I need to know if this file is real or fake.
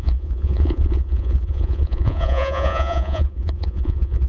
fake